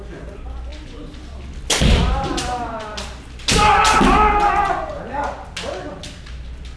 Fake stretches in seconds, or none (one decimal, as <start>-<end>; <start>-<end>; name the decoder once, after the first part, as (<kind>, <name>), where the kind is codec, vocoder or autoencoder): none